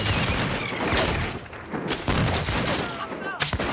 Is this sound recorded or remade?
recorded